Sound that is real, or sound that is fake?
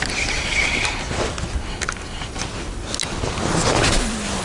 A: real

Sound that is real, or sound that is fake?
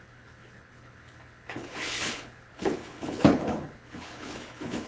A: fake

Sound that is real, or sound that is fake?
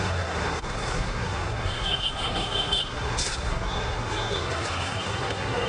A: fake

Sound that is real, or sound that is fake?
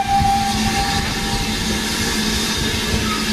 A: real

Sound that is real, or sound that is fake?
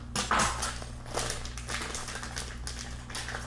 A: real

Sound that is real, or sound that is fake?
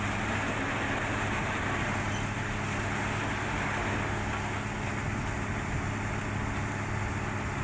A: real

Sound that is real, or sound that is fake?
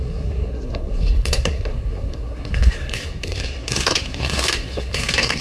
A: fake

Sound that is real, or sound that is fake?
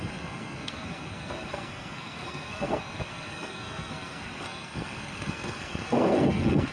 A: fake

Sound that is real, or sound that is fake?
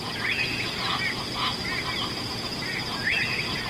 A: fake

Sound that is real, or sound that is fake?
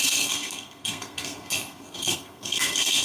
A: fake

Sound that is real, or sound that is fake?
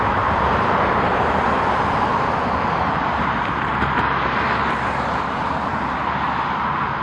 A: fake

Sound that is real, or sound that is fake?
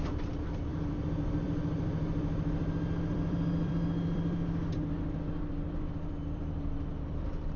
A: fake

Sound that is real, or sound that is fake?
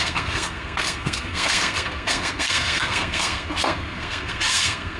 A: fake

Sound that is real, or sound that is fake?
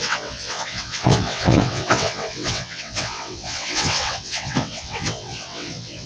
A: fake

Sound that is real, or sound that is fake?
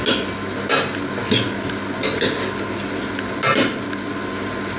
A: real